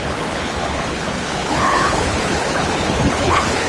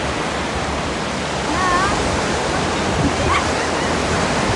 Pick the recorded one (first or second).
second